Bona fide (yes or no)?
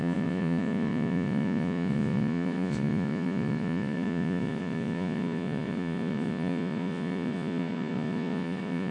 no